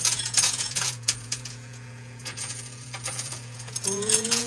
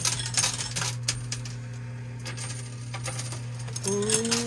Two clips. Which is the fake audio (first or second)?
first